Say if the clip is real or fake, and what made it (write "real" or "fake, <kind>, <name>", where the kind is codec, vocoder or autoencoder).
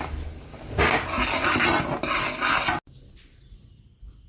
real